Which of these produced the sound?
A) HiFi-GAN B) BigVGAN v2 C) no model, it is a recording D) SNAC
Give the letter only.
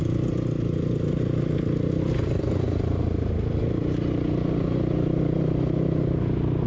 C